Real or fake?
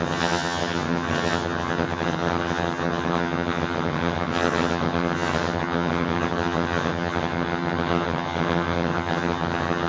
fake